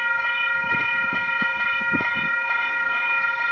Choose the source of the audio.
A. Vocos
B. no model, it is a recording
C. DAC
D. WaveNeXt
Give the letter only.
C